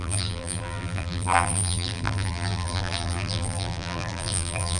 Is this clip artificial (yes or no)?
yes